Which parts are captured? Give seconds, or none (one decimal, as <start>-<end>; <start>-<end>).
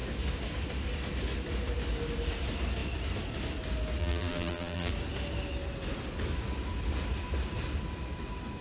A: 0.0-4.0; 4.9-8.6